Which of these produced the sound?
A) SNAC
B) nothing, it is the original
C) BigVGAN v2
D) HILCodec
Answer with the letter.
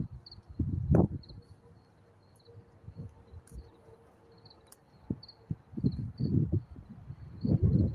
B